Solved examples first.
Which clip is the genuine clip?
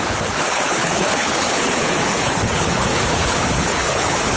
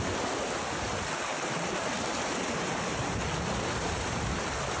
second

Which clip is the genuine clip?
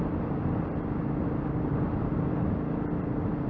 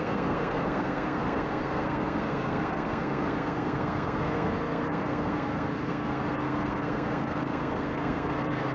first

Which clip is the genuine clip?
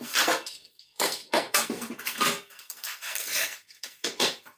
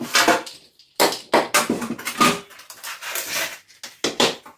second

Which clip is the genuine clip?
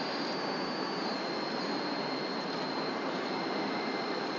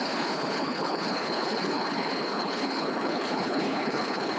first